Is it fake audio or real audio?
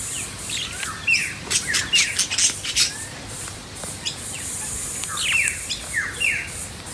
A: real